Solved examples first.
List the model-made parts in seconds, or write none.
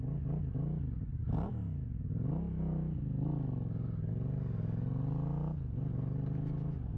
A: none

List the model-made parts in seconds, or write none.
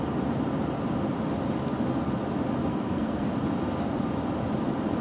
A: 2.7-3.3 (codec, SNAC)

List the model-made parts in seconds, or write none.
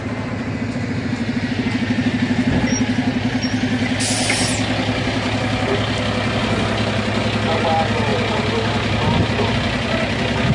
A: none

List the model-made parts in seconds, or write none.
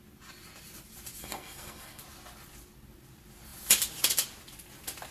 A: 1.2-2.0 (codec, SNAC)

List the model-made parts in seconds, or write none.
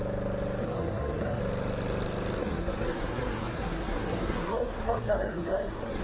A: 0.6-1.4 (codec, SNAC); 2.4-6.0